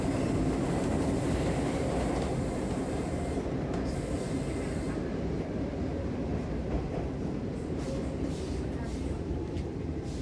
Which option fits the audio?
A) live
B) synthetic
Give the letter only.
B